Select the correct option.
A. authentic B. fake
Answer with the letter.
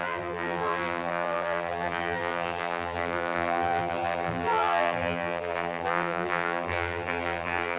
B